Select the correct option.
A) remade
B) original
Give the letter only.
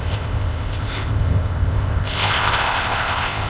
A